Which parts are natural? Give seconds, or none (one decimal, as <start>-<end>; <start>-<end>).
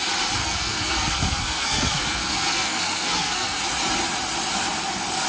0.0-0.4; 3.6-5.3